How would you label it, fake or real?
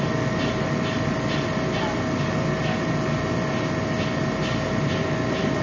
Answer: real